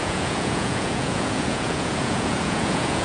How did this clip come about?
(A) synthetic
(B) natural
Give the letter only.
A